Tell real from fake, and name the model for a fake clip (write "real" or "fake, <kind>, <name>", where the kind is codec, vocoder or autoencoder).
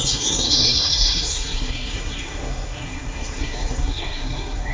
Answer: fake, codec, SNAC